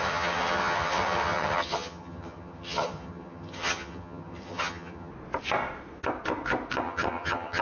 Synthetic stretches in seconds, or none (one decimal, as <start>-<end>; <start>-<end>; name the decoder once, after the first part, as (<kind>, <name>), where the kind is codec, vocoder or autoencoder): 0.0-5.1 (vocoder, HiFi-GAN); 6.8-7.6